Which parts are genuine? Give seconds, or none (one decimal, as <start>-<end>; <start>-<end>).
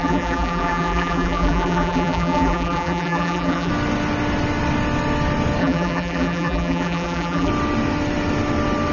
3.7-5.6; 7.5-8.9